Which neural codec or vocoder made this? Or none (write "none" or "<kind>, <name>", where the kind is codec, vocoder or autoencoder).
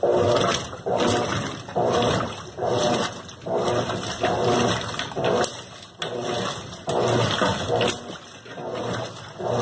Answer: none